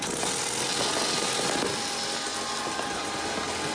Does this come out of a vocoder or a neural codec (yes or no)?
no